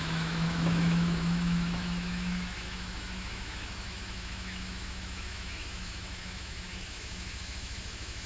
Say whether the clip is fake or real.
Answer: fake